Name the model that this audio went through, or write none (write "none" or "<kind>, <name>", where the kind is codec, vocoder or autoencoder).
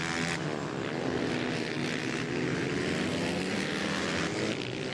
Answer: none